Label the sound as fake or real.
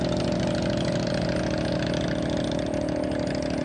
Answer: real